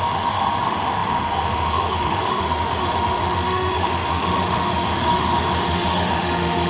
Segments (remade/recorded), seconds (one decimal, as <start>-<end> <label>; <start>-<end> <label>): 0.0-6.7 remade